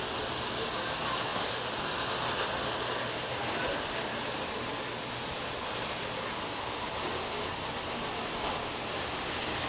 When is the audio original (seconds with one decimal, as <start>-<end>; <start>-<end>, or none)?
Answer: 0.0-9.7